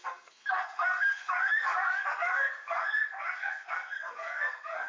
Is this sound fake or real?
fake